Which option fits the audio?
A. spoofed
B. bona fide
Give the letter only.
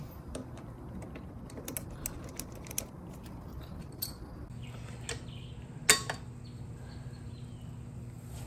B